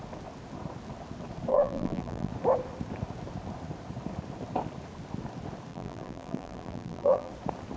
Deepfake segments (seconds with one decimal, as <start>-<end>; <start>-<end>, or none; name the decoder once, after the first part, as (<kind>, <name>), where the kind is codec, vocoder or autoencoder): 1.5-2.3 (vocoder, BigVGAN v2); 5.7-7.3